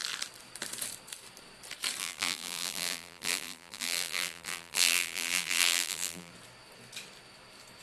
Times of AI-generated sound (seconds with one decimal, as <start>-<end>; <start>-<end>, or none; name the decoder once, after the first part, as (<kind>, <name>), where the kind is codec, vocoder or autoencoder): 2.0-6.3 (vocoder, BigVGAN v2)